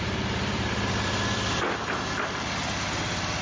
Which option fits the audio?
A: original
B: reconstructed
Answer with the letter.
B